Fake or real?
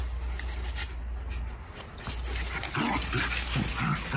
real